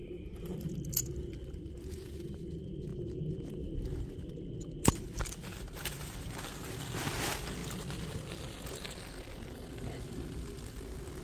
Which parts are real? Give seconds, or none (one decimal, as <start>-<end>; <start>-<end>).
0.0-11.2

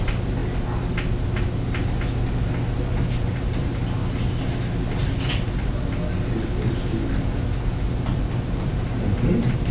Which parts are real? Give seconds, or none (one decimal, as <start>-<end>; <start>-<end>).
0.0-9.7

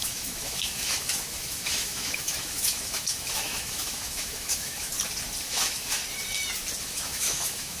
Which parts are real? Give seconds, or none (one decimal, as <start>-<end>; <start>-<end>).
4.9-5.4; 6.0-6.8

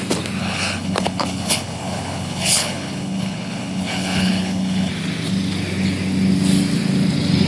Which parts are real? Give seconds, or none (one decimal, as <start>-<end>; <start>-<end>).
0.0-0.4; 4.9-7.5

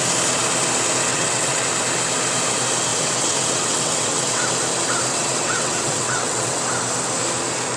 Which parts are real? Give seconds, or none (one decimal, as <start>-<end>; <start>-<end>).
0.0-1.1; 1.6-2.9; 4.5-5.1; 6.6-7.8

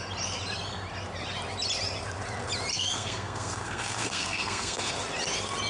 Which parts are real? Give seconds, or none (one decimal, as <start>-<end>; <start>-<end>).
0.0-2.7; 4.9-5.7

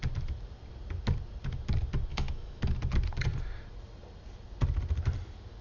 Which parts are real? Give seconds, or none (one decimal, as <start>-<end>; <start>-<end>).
0.0-2.1; 2.6-5.6

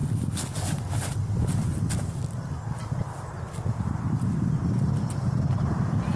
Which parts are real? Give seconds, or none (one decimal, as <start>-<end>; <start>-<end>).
0.0-6.2